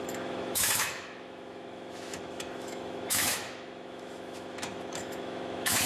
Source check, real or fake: fake